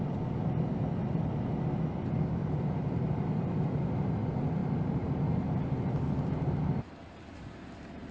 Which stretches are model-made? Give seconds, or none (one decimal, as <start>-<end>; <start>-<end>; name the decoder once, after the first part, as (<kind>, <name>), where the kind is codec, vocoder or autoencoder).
2.4-3.7 (vocoder, BigVGAN v2); 4.6-5.1